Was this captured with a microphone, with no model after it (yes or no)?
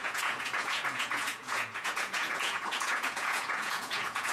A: no